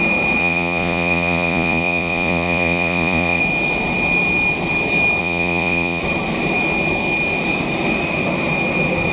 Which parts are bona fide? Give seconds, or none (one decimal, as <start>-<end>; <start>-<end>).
0.0-0.4; 3.4-5.2; 6.0-9.1